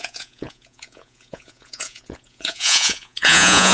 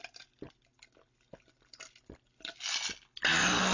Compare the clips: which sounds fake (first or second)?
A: first